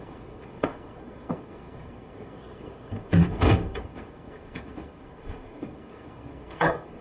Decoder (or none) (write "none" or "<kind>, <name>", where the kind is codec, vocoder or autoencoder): codec, SNAC